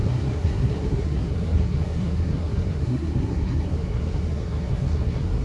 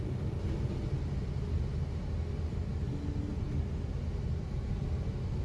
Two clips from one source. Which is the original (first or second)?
second